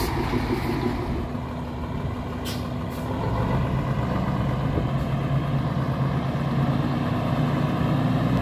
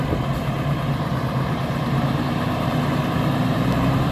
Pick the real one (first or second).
first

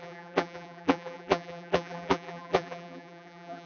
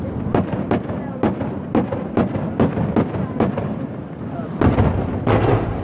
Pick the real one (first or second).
second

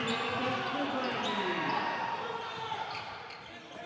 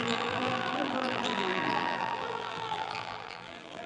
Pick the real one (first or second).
first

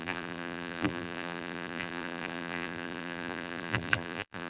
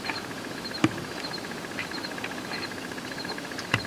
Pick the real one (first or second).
second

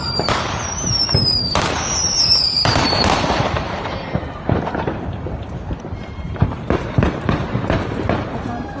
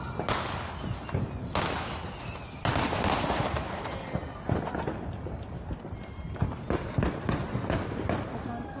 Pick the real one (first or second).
second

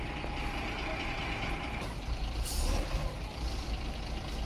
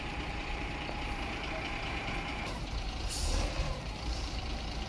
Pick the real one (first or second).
first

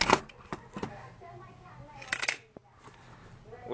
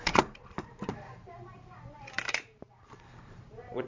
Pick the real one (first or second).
first